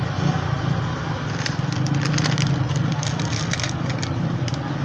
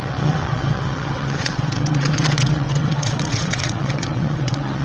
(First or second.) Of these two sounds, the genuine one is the first